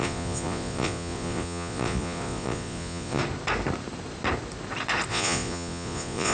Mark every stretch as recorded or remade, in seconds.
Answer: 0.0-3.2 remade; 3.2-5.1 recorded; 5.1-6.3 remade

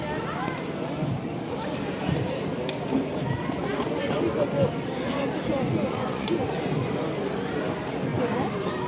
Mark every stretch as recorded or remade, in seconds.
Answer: 0.0-5.5 recorded; 5.5-6.7 remade; 6.7-8.9 recorded

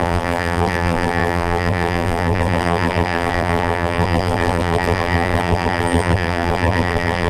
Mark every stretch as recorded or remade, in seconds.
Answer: 0.0-7.3 remade

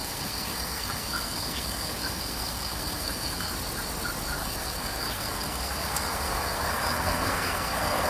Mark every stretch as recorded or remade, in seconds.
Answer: 0.0-3.5 remade; 3.5-4.4 recorded; 4.4-8.1 remade

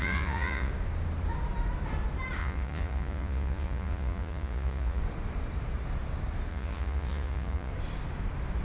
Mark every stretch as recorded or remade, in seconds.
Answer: 0.0-0.7 remade; 0.7-2.4 recorded; 2.4-5.0 remade; 5.0-6.5 recorded; 6.5-7.7 remade; 7.7-8.6 recorded

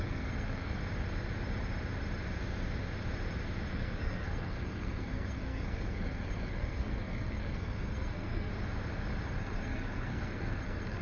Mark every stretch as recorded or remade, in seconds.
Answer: 0.0-0.8 remade; 0.8-3.7 recorded; 3.7-8.5 remade; 8.5-9.4 recorded; 9.4-11.0 remade